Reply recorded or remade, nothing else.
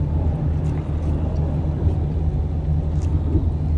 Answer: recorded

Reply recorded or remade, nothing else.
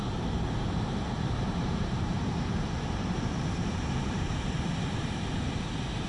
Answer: remade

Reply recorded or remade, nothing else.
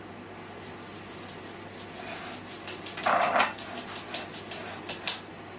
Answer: recorded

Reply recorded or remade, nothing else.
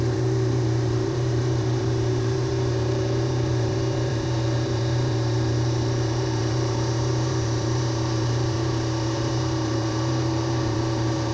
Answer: remade